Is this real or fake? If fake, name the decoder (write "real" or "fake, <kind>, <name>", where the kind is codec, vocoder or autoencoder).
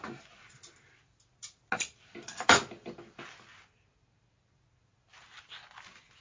real